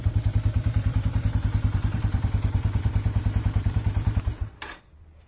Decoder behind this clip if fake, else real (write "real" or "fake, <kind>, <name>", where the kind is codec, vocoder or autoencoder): fake, vocoder, BigVGAN v2